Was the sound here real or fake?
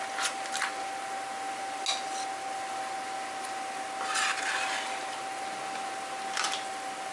real